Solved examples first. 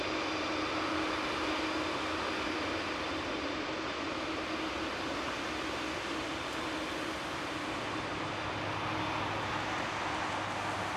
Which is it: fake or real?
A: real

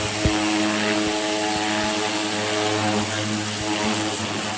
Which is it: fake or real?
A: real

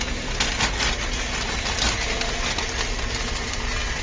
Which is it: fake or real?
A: real